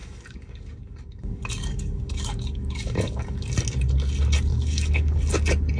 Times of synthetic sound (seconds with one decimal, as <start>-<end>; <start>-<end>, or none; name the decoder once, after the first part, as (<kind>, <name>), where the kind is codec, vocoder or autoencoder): 0.0-3.5 (codec, DAC); 4.5-5.2